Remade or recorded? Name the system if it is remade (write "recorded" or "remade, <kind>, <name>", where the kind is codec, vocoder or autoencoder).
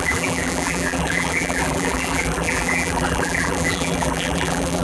remade, vocoder, BigVGAN v2